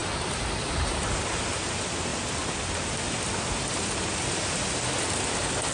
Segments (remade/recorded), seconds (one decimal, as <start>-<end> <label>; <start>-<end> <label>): 0.0-5.7 recorded

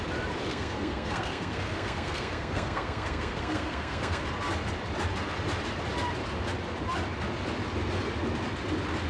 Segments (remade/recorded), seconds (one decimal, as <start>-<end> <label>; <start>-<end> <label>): 0.0-0.5 recorded; 0.5-4.2 remade; 4.2-9.1 recorded

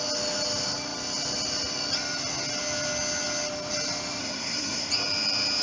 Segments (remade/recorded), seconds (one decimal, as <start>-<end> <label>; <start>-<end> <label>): 0.0-4.2 recorded; 4.2-4.9 remade; 4.9-5.6 recorded

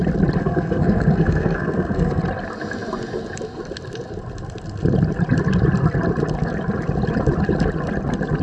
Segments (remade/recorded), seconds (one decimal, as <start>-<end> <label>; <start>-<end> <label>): 0.0-0.4 recorded; 0.4-2.2 remade; 2.2-8.4 recorded